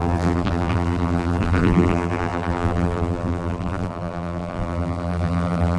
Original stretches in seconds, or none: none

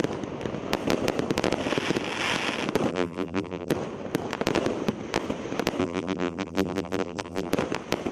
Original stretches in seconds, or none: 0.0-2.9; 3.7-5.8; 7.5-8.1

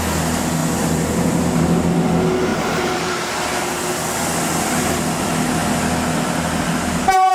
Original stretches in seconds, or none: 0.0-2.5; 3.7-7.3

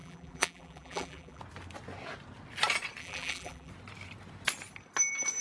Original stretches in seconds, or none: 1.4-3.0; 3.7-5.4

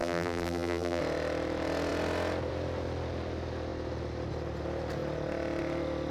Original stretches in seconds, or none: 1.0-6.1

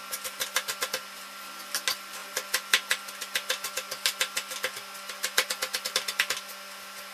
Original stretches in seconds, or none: 0.0-7.1